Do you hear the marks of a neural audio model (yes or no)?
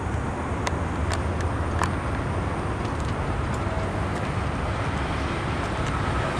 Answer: no